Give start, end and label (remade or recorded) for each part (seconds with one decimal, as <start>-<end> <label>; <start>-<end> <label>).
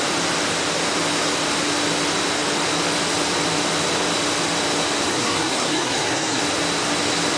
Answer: 0.0-5.1 recorded; 5.1-6.4 remade; 6.4-7.4 recorded